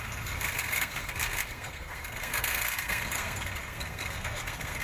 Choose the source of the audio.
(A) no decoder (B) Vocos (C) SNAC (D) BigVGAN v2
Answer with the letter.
C